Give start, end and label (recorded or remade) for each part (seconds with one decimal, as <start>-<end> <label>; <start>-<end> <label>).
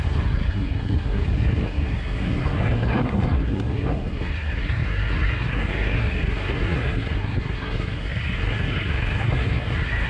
0.0-10.1 remade